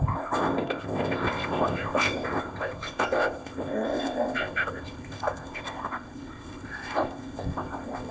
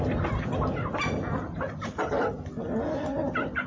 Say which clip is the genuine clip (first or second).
second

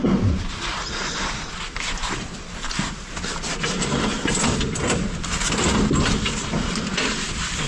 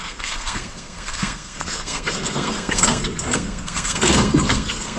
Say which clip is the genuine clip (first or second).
first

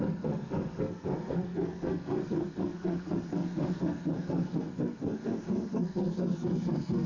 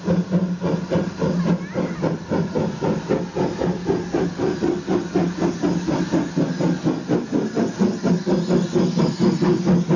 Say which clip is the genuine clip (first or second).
second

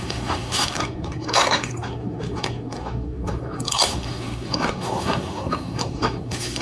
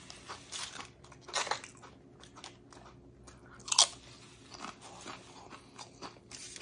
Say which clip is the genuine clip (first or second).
second